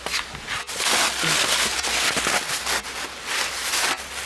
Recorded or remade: recorded